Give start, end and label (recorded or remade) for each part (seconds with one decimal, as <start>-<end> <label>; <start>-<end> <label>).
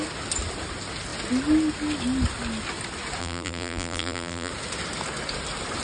0.0-3.2 recorded; 3.2-4.5 remade; 4.5-5.8 recorded